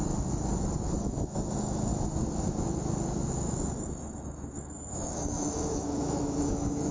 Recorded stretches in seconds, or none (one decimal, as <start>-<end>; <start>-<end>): 0.0-0.8; 1.9-3.3